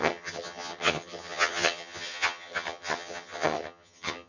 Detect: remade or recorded remade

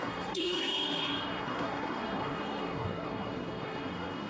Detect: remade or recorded remade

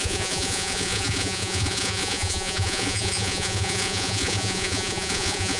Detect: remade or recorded remade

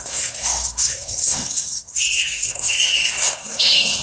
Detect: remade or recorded remade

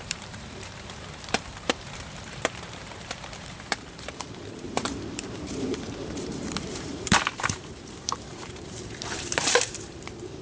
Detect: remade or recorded remade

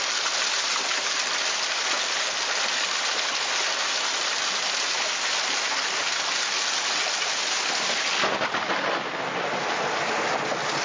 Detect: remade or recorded recorded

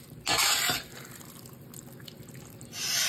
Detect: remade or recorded recorded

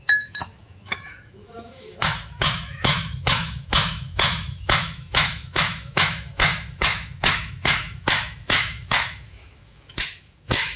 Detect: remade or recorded remade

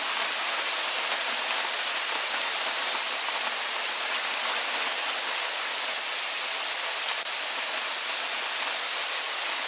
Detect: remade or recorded recorded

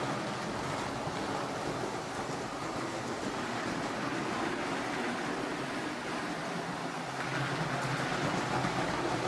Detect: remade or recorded recorded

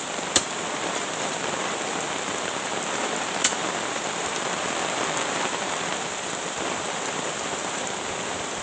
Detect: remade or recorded remade